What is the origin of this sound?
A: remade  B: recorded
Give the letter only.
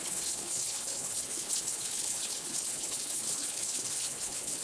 A